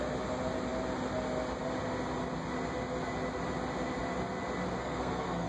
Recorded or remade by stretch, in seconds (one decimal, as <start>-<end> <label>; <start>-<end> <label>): 0.0-4.8 recorded; 4.8-5.5 remade